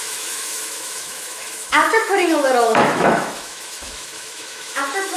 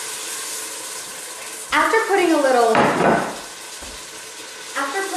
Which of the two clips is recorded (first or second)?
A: second